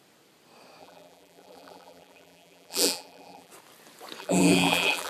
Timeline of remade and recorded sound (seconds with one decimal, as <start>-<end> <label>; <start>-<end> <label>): 0.0-0.8 recorded; 0.8-3.5 remade; 3.5-4.2 recorded; 4.2-5.1 remade